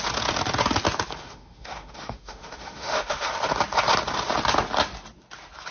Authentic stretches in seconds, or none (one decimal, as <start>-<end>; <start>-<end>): 0.0-1.2; 3.3-5.7